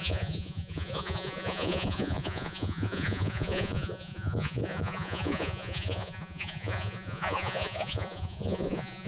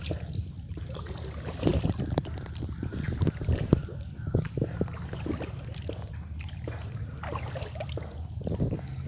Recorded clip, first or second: second